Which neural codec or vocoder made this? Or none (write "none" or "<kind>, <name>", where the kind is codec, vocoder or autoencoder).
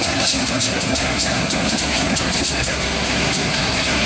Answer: codec, SNAC